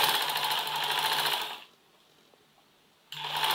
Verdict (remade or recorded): recorded